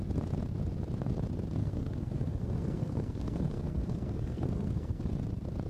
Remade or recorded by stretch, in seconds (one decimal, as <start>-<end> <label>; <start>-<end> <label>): 0.0-1.6 recorded; 1.6-5.0 remade; 5.0-5.7 recorded